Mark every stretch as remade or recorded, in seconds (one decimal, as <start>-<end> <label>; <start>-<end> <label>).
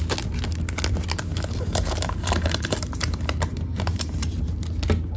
0.0-1.3 recorded; 1.3-4.4 remade; 4.4-5.2 recorded